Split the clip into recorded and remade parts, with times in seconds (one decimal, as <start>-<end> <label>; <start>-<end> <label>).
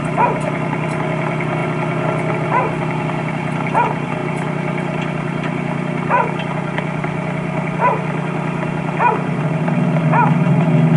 0.0-11.0 recorded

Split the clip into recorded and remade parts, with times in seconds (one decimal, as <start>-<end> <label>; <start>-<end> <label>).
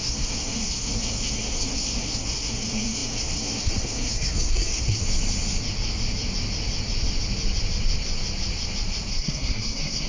0.0-5.0 remade; 5.0-9.1 recorded; 9.1-10.1 remade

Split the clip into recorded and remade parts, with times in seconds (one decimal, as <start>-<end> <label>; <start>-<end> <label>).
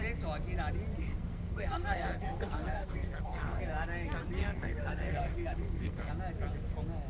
0.0-1.0 recorded; 1.0-3.6 remade; 3.6-4.4 recorded; 4.4-6.1 remade; 6.1-7.1 recorded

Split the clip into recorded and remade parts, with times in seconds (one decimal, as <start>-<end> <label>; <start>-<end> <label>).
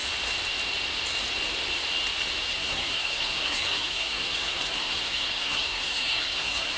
0.0-2.5 recorded; 2.5-6.8 remade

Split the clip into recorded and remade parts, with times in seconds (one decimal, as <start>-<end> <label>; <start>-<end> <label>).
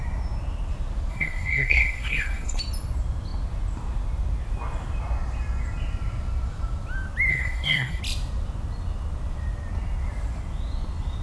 0.0-1.1 recorded; 1.1-2.6 remade; 2.6-7.3 recorded; 7.3-8.0 remade; 8.0-11.2 recorded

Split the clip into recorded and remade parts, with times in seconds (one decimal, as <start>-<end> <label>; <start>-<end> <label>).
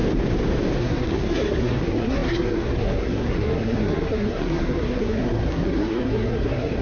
0.0-0.8 recorded; 0.8-6.8 remade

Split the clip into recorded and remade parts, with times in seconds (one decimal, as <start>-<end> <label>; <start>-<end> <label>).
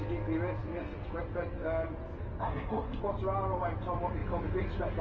0.0-2.4 recorded; 2.4-3.0 remade; 3.0-5.0 recorded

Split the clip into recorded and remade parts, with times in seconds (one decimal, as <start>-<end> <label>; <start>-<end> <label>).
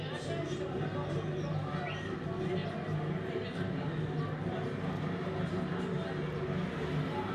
0.0-7.3 recorded